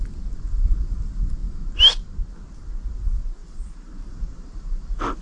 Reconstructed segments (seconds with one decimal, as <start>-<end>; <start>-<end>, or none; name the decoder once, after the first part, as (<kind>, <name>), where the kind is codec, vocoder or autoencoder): 3.4-5.2 (vocoder, BigVGAN v2)